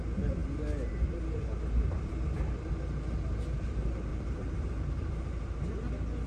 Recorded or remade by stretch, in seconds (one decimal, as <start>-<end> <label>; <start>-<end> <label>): 0.0-4.1 recorded; 4.1-5.7 remade; 5.7-6.3 recorded